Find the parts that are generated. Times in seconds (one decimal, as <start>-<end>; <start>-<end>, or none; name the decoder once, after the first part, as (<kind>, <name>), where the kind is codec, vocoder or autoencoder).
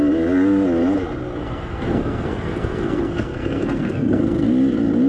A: 1.4-4.5 (codec, SNAC)